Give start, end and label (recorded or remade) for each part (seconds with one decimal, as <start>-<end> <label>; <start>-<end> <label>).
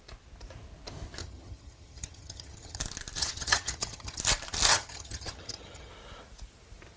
0.0-1.2 recorded; 1.2-2.8 remade; 2.8-3.2 recorded; 3.2-4.2 remade; 4.2-4.7 recorded; 4.7-5.9 remade; 5.9-7.0 recorded